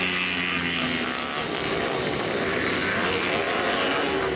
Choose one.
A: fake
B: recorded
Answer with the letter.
B